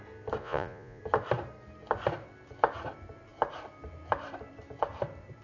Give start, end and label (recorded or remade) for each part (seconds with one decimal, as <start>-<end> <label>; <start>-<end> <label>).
0.0-0.4 recorded; 0.4-1.0 remade; 1.0-5.4 recorded